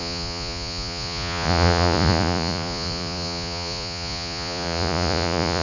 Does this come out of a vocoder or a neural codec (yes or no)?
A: yes